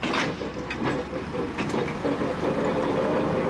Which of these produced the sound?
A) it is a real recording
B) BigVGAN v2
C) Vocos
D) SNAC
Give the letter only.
A